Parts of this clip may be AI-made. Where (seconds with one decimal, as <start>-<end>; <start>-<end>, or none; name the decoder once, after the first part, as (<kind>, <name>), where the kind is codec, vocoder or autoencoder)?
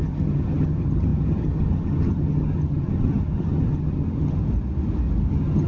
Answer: 0.0-4.4 (vocoder, HiFi-GAN); 5.3-5.7